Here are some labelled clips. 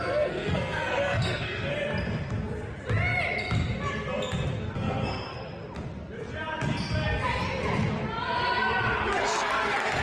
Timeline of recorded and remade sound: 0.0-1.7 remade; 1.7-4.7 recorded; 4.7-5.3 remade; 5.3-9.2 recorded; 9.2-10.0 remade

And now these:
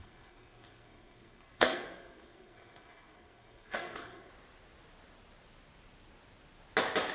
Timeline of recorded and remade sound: 0.0-4.3 remade; 4.3-7.1 recorded

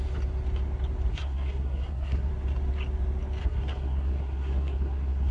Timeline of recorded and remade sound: 0.0-1.1 recorded; 1.1-2.3 remade; 2.3-3.4 recorded; 3.4-5.3 remade